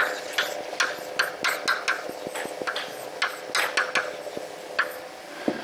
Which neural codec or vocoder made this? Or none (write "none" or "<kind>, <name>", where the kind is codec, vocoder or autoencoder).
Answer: none